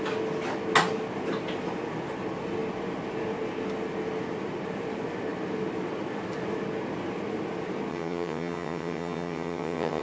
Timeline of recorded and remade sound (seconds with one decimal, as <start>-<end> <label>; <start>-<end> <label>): 0.0-7.9 recorded; 7.9-10.0 remade